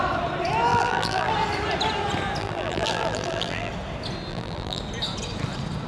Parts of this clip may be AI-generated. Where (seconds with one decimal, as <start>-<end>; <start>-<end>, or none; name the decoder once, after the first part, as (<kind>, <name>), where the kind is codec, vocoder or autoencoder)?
0.7-1.3 (vocoder, BigVGAN v2); 2.4-3.7; 4.3-4.8